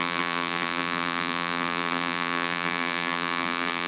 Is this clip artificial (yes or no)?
yes